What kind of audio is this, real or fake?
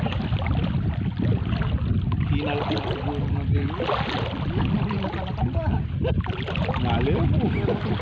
real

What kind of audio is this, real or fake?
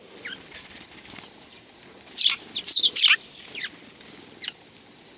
real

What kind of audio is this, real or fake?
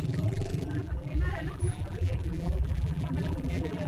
fake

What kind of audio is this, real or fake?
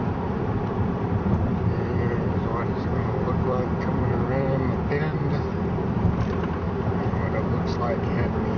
fake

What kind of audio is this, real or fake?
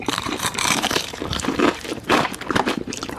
fake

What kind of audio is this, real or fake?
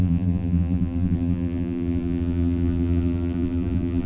fake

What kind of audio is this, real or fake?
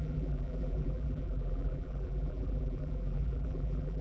fake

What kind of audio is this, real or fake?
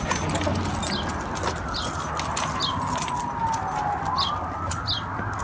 real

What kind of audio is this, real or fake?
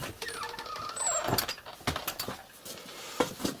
real